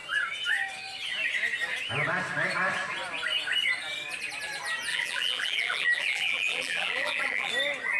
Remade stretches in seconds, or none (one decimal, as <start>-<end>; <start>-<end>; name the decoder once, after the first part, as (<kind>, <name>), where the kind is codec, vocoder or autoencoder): 4.9-7.5 (vocoder, BigVGAN v2)